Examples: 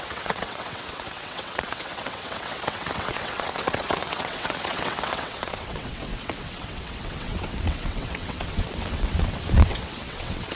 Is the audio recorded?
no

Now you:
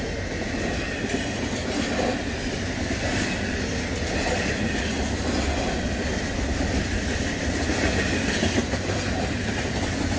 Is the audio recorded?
yes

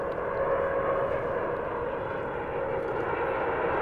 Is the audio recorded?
yes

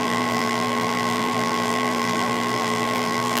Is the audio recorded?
no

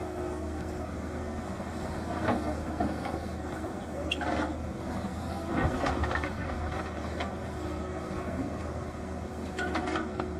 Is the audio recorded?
no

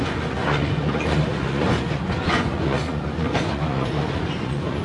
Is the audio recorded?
no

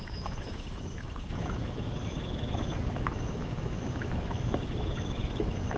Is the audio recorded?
no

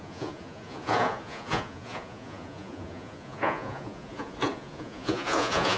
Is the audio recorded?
no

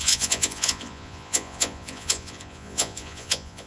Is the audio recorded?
no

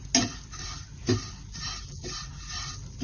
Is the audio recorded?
yes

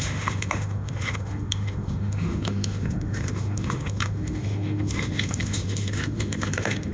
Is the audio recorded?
no